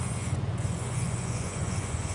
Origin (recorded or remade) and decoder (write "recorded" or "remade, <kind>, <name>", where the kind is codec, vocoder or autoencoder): remade, vocoder, Vocos